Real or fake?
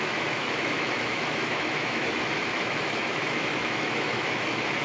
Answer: fake